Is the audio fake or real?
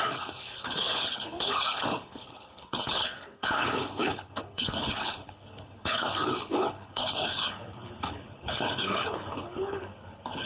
fake